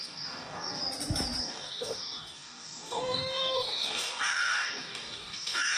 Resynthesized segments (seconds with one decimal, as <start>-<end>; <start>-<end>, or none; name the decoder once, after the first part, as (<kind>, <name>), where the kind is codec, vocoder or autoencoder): 0.0-0.8 (codec, DAC); 1.4-5.8